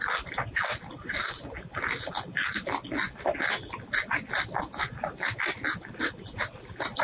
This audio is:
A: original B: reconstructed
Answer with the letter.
A